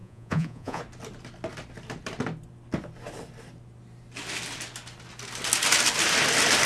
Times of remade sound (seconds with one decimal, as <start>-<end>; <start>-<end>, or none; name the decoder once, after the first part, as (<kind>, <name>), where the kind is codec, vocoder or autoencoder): 0.0-0.8 (vocoder, Vocos)

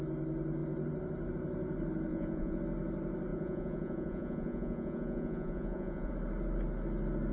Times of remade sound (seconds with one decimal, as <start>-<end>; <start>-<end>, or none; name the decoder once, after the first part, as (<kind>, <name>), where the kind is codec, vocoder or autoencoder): 2.1-2.6 (vocoder, Vocos); 3.3-6.1

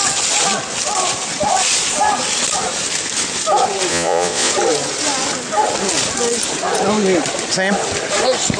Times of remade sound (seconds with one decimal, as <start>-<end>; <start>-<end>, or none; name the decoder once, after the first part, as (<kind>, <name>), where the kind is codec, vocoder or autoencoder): 3.9-4.5 (vocoder, Vocos)